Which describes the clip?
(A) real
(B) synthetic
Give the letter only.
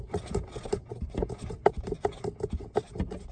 A